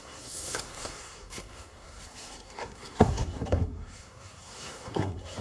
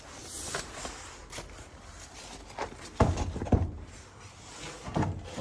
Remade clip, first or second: first